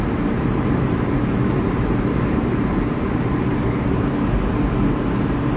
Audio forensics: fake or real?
fake